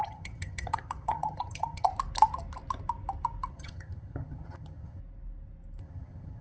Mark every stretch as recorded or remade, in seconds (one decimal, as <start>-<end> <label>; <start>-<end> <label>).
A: 0.0-1.9 remade; 1.9-3.5 recorded; 3.5-5.0 remade; 5.0-5.8 recorded; 5.8-6.4 remade